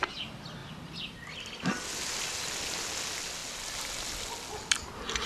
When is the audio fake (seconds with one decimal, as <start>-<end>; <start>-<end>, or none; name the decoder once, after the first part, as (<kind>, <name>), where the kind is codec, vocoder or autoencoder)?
0.6-2.6 (vocoder, BigVGAN v2)